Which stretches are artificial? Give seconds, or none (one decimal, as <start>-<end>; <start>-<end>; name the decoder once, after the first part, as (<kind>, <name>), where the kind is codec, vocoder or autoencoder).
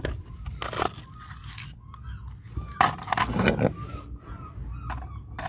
none